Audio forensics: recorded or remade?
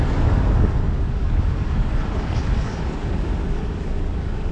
remade